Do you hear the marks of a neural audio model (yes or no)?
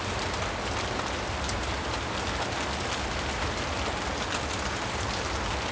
no